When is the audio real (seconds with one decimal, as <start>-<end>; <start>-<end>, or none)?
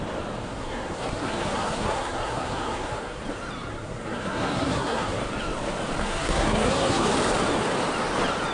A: 0.0-0.4; 3.2-3.7; 5.2-6.0; 7.1-8.5